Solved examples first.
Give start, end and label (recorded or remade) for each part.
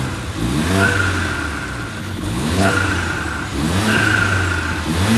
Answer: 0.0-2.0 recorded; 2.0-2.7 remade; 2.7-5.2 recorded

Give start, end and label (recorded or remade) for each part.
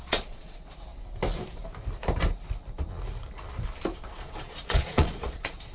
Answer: 0.0-0.9 remade; 0.9-4.1 recorded; 4.1-5.7 remade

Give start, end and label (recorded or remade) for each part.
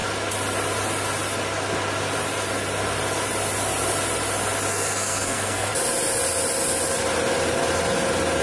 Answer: 0.0-4.7 recorded; 4.7-5.7 remade; 5.7-8.4 recorded